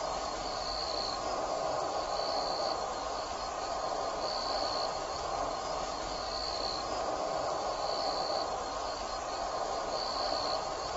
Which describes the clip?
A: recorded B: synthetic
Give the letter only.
B